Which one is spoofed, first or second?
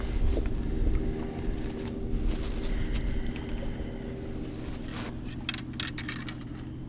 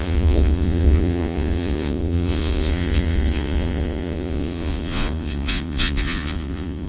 second